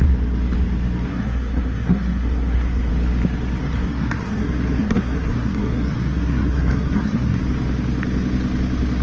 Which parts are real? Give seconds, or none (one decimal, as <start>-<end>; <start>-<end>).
0.0-1.1; 2.9-3.6; 7.4-9.0